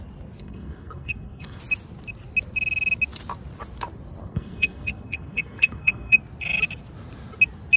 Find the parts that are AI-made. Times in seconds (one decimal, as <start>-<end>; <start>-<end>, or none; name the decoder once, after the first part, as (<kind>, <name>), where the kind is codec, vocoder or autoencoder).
0.4-1.6 (codec, SNAC); 4.2-6.2